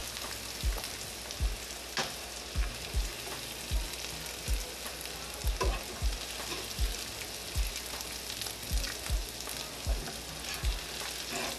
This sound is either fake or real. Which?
real